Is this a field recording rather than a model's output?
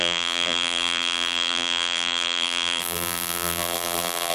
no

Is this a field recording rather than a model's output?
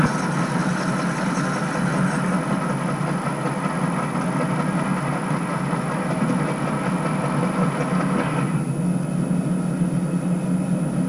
yes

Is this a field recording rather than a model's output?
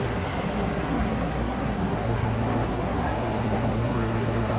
no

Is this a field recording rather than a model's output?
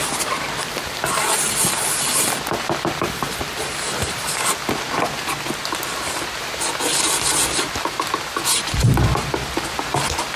yes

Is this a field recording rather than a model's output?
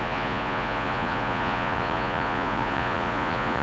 no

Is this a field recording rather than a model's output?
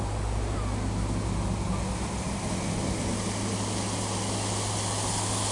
yes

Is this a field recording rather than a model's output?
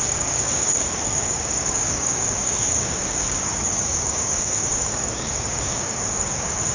no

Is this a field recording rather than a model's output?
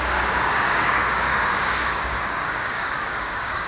no